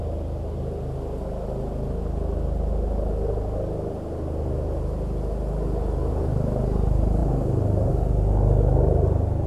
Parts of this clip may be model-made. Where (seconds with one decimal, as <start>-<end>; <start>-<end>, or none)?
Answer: none